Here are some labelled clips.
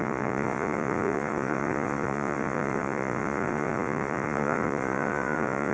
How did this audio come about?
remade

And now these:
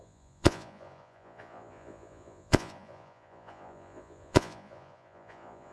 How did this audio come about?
remade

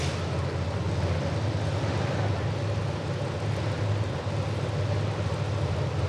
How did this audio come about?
recorded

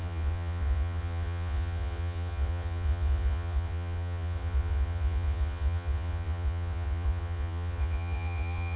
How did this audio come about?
remade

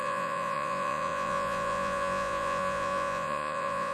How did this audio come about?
remade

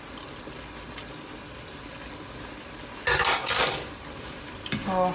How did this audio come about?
recorded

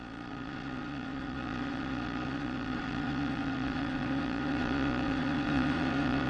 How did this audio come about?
remade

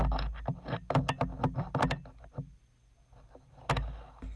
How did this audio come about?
recorded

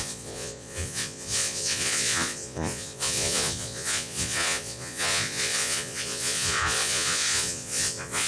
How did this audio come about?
remade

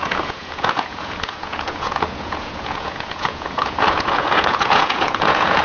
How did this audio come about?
remade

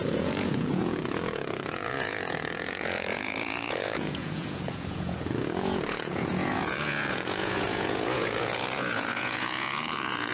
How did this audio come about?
remade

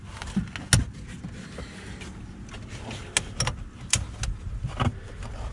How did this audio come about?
recorded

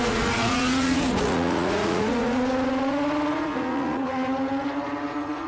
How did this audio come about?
remade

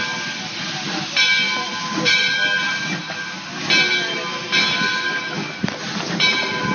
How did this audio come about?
recorded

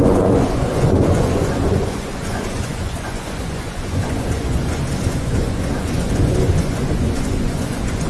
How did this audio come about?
remade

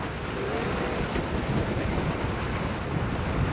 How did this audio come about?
recorded